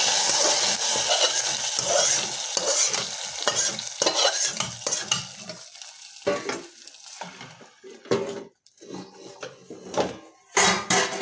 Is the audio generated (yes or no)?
no